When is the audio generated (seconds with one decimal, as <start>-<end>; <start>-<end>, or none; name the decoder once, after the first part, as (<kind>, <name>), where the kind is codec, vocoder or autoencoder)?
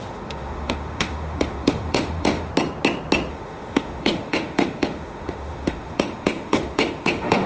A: 0.0-2.5 (autoencoder, DAC-VAE); 3.3-7.5